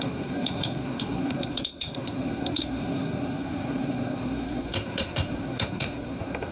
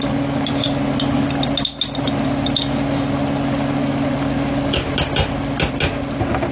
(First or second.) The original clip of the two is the second